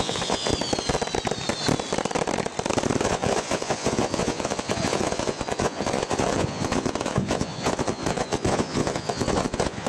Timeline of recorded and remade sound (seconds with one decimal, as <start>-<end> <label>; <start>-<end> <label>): 0.0-0.5 remade; 0.5-3.0 recorded; 3.0-9.9 remade